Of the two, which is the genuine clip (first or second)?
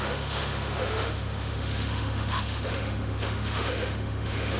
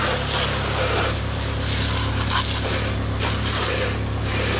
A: second